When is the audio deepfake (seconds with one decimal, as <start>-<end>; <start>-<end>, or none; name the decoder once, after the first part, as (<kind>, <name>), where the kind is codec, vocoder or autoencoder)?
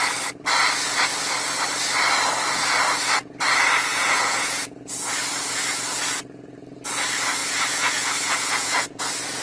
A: 3.9-5.1 (vocoder, Vocos); 7.4-9.0